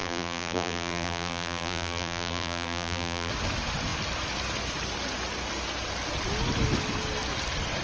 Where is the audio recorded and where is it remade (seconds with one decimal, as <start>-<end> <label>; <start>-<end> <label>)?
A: 0.0-3.3 remade; 3.3-7.8 recorded